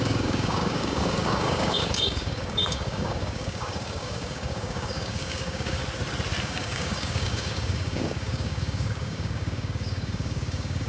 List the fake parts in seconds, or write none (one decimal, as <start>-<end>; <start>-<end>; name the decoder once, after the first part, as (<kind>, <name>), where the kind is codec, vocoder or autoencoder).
0.0-5.8 (codec, DAC); 6.4-10.9